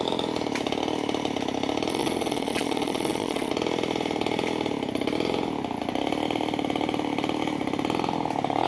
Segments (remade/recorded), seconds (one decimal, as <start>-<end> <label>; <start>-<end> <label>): 0.0-1.9 recorded; 1.9-3.5 remade; 3.5-8.7 recorded